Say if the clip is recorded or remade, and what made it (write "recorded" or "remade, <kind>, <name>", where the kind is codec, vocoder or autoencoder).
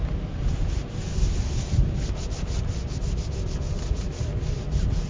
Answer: recorded